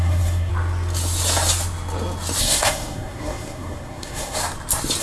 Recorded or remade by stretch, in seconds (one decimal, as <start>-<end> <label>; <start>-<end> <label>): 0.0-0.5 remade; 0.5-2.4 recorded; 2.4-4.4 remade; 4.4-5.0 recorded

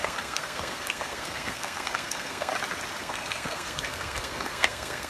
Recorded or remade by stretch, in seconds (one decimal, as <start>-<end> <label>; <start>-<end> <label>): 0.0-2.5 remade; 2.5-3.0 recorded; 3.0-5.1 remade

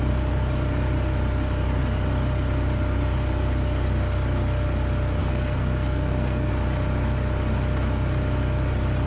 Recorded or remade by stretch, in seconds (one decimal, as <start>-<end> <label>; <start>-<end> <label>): 0.0-5.2 recorded; 5.2-6.5 remade; 6.5-9.1 recorded

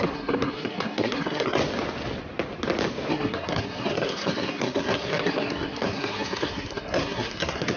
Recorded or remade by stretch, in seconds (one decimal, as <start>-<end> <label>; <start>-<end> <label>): 0.0-1.6 remade; 1.6-3.1 recorded; 3.1-7.8 remade